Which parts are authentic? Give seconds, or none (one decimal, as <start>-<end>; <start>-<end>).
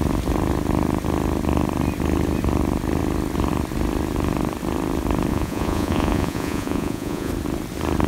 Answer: 0.0-5.3; 7.3-8.1